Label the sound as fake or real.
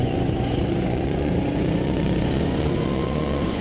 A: fake